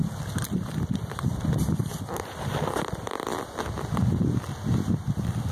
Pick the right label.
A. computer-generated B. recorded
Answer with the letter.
B